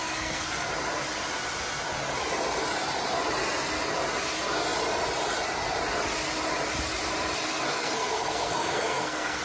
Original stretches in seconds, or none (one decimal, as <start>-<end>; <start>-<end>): 0.7-7.7